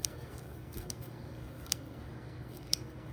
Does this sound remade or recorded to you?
remade